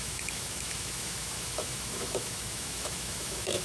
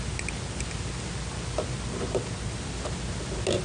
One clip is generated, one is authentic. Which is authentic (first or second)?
second